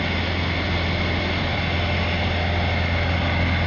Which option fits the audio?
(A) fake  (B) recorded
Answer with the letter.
B